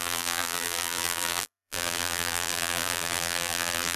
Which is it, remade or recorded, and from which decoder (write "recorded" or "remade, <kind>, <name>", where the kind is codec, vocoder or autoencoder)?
remade, vocoder, BigVGAN v2